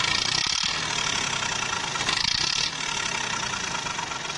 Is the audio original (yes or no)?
yes